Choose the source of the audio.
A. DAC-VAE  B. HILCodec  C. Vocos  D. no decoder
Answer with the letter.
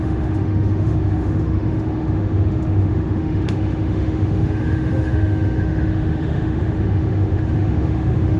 A